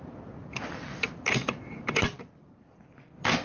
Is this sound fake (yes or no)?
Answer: no